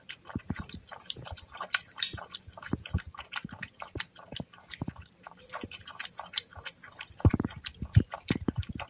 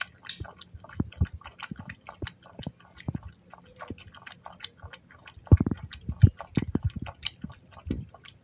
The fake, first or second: first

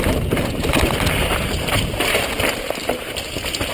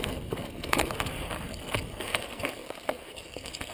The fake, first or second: second